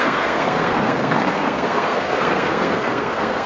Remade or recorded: remade